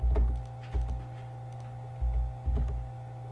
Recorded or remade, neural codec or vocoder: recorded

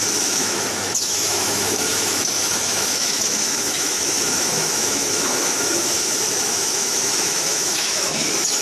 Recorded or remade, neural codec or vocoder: remade, autoencoder, DAC-VAE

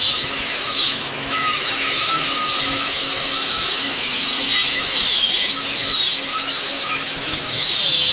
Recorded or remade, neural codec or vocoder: remade, autoencoder, DAC-VAE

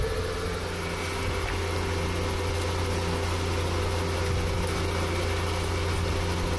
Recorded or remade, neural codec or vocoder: recorded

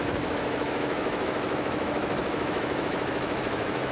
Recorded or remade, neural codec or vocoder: remade, autoencoder, DAC-VAE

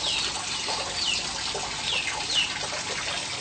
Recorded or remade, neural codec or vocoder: recorded